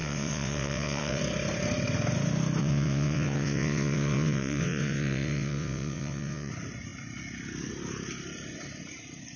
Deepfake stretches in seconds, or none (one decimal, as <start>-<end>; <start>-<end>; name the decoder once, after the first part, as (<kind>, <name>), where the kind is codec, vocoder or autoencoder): 0.0-1.2 (vocoder, WaveNeXt); 2.6-6.5